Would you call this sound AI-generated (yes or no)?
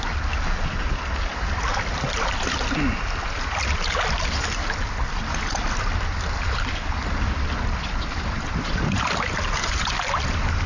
no